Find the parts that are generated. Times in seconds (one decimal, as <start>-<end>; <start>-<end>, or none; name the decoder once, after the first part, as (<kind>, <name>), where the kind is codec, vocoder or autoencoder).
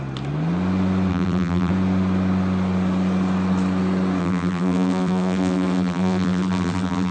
1.1-1.7 (vocoder, BigVGAN v2); 4.2-7.1